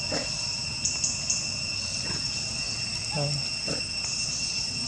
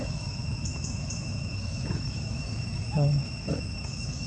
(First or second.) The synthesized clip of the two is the second